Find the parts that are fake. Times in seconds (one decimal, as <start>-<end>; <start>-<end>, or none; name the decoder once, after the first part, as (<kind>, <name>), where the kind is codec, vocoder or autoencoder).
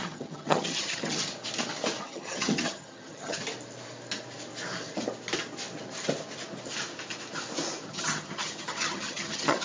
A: 0.0-1.3 (vocoder, HiFi-GAN); 2.0-3.4; 7.9-9.6